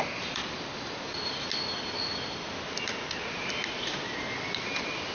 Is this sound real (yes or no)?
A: yes